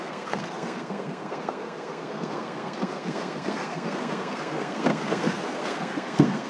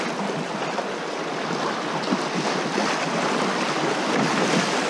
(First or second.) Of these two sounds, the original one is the second